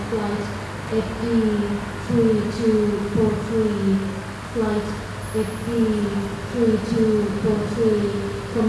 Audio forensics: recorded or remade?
recorded